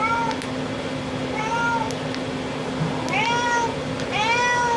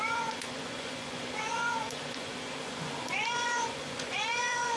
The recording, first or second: first